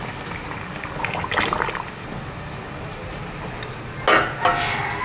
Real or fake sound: real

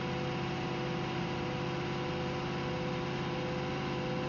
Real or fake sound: real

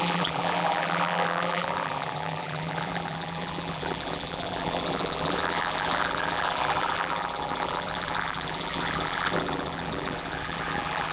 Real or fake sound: fake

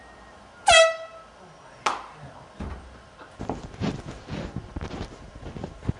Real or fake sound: real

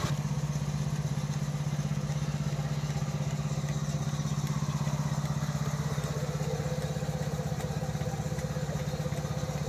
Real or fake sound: real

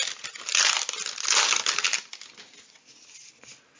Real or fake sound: real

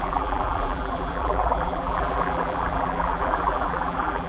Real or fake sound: fake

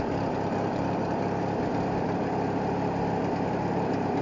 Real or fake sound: fake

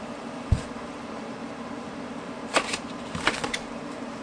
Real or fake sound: fake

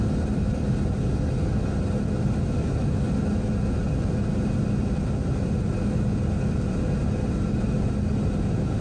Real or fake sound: real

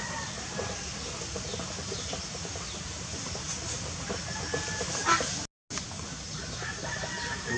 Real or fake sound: real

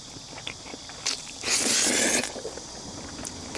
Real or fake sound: real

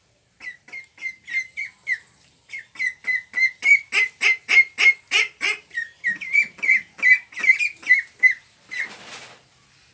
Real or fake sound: fake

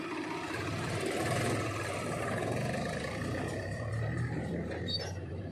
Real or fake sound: fake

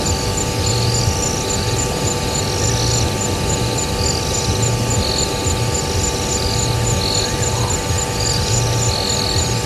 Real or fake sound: real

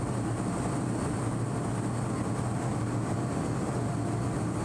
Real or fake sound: real